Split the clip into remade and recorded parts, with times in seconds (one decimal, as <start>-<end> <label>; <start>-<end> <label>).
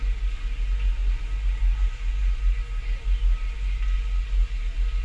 0.0-5.0 recorded